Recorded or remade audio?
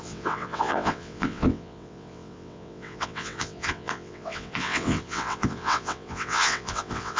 remade